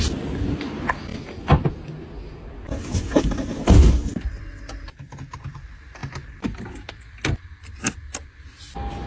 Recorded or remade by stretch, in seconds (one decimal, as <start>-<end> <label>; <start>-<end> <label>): 0.0-9.1 recorded